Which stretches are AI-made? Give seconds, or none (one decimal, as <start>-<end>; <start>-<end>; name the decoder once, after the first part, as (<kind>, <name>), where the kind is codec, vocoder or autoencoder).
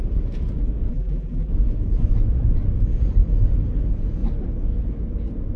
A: 0.9-1.5 (vocoder, BigVGAN v2)